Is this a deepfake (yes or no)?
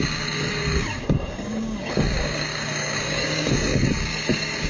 yes